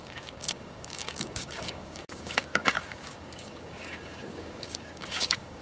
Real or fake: fake